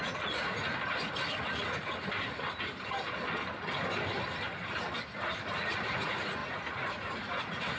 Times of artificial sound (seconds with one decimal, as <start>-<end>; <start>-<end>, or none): 0.0-0.7; 1.4-1.9; 5.5-7.8